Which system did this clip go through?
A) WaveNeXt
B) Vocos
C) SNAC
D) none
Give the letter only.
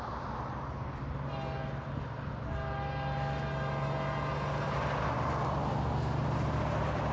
D